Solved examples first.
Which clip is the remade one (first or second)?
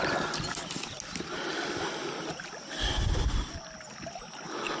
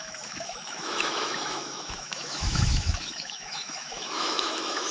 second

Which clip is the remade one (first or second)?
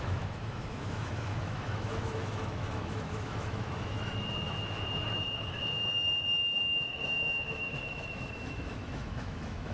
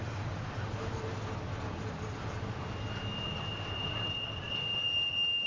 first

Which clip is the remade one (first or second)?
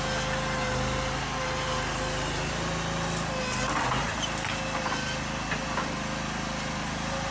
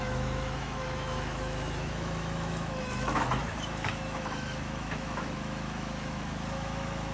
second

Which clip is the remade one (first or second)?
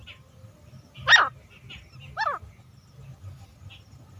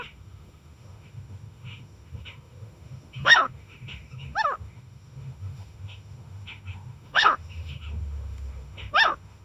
second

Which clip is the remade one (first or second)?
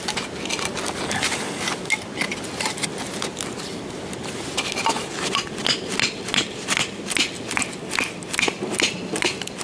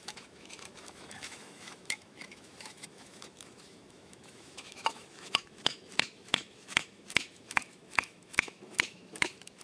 second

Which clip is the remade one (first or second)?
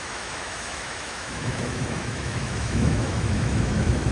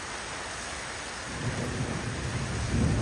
first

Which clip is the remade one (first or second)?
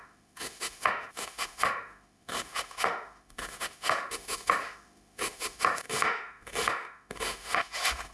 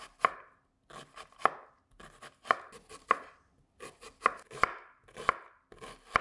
first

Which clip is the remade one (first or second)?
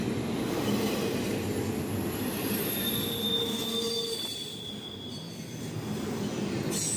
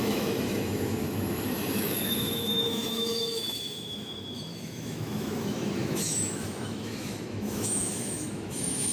second